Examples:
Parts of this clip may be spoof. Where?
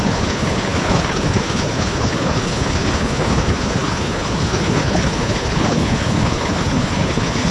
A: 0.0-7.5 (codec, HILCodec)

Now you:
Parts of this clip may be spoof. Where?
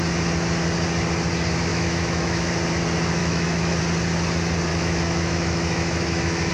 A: 1.7-2.5 (autoencoder, DAC-VAE); 3.2-3.8; 4.7-6.5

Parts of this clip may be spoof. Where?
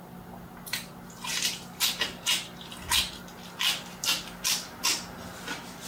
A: none